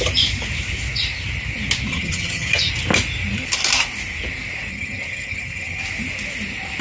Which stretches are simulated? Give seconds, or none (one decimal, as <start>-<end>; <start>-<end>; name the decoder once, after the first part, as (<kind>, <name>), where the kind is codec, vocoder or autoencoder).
1.9-2.7 (vocoder, HiFi-GAN); 4.7-5.8